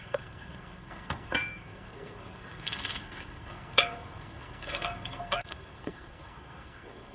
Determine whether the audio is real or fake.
fake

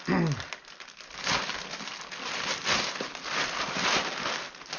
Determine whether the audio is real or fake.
real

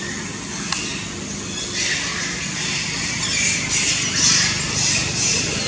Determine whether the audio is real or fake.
real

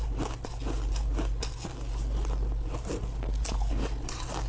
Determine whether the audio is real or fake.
real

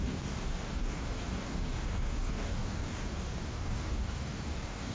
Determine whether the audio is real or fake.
fake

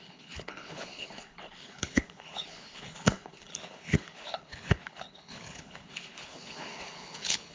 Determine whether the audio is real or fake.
fake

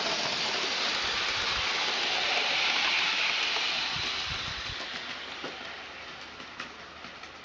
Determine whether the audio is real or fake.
real